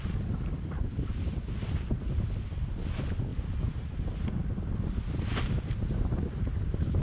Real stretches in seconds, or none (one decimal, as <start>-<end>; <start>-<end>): 0.0-7.0